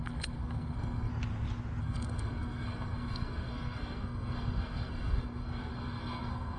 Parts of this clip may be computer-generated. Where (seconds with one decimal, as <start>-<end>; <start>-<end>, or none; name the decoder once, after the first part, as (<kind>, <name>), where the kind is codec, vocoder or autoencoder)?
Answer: 0.0-1.1 (codec, SNAC); 1.8-6.6